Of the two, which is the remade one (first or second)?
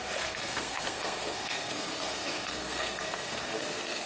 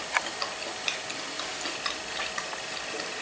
first